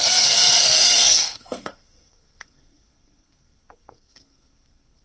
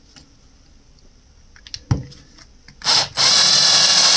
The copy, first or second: first